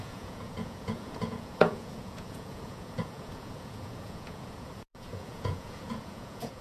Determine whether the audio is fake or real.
fake